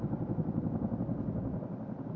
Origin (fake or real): real